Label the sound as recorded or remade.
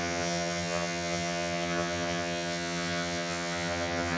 remade